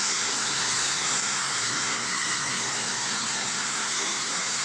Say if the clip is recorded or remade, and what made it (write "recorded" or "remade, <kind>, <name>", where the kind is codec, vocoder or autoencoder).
remade, codec, SNAC